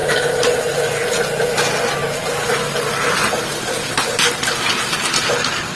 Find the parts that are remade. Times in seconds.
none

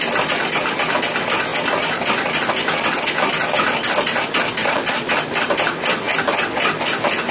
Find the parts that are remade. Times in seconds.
4.6-5.1 (vocoder, Vocos)

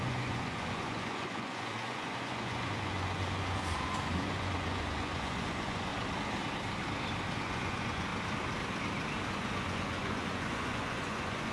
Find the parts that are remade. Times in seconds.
0.0-5.9 (vocoder, Vocos); 7.4-8.1; 9.3-11.5

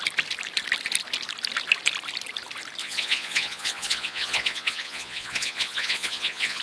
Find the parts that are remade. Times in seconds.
2.8-6.6 (vocoder, Vocos)